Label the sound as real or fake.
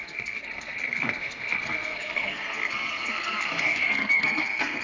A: fake